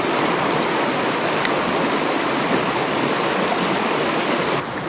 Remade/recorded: recorded